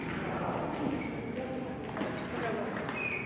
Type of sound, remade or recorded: recorded